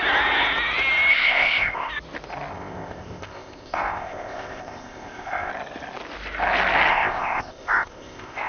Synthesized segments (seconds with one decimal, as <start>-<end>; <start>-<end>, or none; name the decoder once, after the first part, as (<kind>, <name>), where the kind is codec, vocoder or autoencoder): 1.1-1.9 (codec, ZipCodec); 2.5-5.5; 6.9-8.5